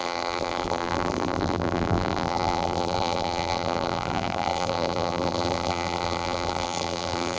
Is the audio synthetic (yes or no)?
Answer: yes